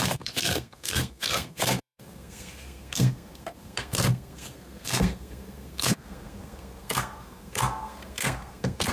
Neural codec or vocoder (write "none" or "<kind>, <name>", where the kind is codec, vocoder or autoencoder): codec, SNAC